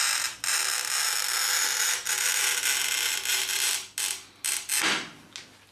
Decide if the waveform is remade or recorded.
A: recorded